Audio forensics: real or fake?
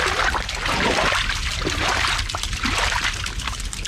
real